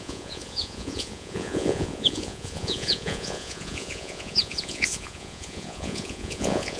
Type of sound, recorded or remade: remade